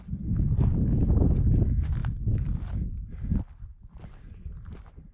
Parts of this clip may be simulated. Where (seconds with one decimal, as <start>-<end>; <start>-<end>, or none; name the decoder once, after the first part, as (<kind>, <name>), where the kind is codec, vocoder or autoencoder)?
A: none